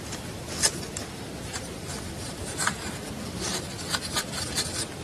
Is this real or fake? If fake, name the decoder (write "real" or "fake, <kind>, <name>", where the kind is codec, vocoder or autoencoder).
real